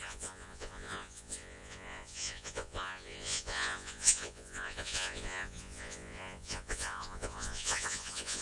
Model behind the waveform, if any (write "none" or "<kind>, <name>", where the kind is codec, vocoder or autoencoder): vocoder, Vocos